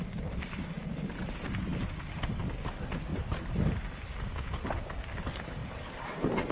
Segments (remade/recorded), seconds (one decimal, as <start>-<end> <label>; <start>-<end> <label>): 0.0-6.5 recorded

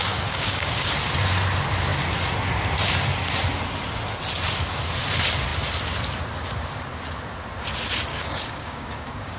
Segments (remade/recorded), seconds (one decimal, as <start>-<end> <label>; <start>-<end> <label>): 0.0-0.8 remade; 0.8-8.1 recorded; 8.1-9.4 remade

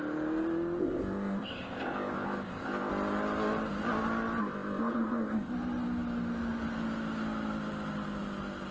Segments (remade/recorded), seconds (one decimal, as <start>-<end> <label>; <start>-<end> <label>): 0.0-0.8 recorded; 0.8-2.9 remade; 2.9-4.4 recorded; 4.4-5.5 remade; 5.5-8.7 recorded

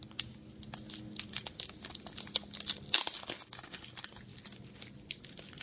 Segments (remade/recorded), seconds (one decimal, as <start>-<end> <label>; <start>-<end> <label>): 0.0-5.6 recorded